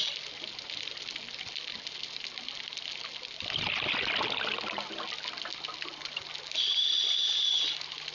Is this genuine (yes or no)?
yes